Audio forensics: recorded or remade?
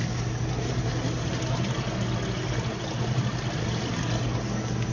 recorded